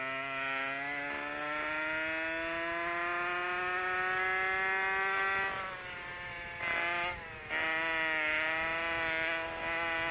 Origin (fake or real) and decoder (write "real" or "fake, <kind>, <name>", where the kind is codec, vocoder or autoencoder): real